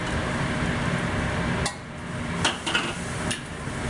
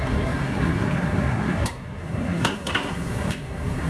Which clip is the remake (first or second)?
second